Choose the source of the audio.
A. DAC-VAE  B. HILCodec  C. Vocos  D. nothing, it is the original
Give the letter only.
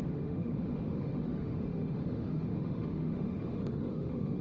A